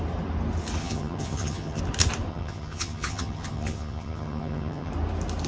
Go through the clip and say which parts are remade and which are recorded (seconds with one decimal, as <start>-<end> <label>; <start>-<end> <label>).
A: 0.0-0.8 recorded; 0.8-1.8 remade; 1.8-2.3 recorded; 2.3-4.9 remade; 4.9-5.5 recorded